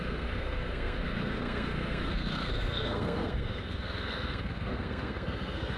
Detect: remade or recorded remade